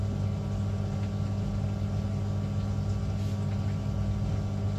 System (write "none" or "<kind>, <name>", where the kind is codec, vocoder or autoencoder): none